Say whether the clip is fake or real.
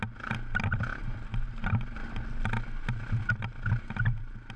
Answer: real